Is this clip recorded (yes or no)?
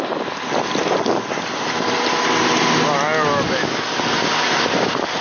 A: yes